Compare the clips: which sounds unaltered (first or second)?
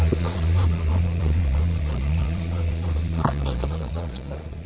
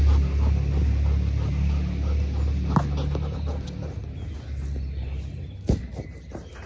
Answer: second